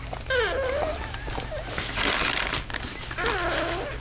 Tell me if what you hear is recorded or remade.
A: recorded